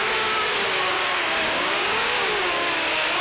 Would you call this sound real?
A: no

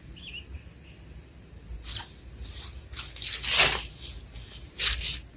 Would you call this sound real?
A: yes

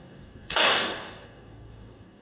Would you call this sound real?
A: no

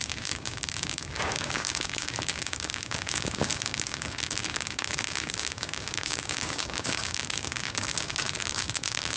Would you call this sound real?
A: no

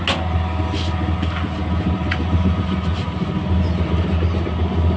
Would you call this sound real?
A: yes